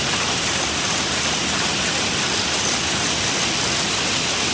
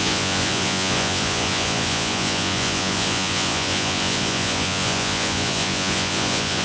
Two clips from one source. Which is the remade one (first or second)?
second